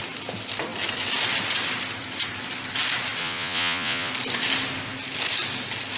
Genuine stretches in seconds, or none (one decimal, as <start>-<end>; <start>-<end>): 0.0-3.2; 4.1-6.0